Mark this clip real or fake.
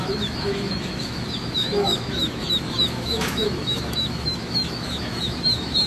fake